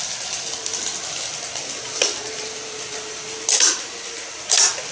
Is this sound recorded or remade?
recorded